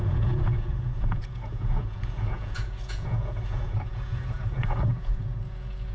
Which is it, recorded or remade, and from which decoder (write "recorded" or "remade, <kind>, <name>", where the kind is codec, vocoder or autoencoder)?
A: remade, vocoder, Vocos